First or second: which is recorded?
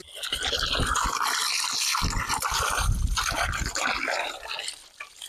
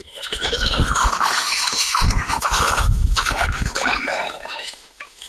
first